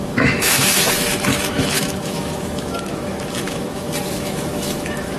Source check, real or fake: fake